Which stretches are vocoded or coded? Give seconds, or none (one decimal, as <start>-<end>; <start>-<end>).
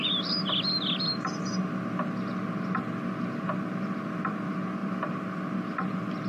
4.8-6.3